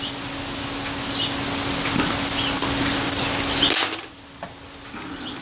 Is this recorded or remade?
recorded